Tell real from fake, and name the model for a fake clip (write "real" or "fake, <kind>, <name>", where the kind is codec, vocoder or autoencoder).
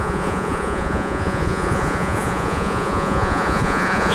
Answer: fake, vocoder, Vocos